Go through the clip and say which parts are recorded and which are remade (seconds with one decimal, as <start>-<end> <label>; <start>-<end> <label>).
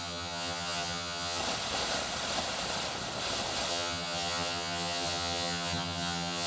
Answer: 0.0-1.4 remade; 1.4-3.7 recorded; 3.7-6.5 remade